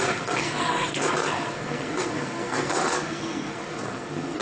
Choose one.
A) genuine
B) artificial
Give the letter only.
B